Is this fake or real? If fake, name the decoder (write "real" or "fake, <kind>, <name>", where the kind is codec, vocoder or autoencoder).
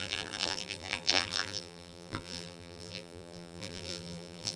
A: fake, vocoder, BigVGAN v2